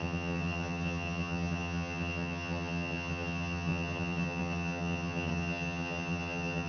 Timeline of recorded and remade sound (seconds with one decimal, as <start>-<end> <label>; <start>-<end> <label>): 0.0-6.7 remade